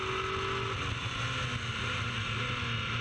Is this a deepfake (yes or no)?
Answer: no